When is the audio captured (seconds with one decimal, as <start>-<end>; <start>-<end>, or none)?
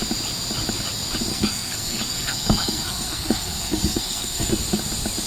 0.0-1.3; 4.5-5.3